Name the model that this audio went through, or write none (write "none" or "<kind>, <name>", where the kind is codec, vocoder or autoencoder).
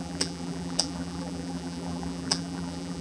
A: vocoder, BigVGAN v2